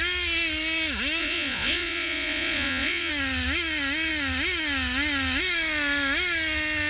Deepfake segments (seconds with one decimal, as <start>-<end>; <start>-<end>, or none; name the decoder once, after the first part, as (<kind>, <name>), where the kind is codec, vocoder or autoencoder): 1.2-3.1 (vocoder, Vocos)